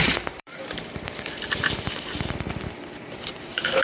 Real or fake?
fake